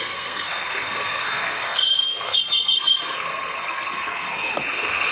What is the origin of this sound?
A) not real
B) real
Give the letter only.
A